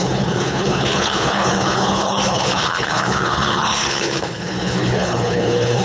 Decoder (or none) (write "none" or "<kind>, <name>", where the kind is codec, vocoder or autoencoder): codec, HILCodec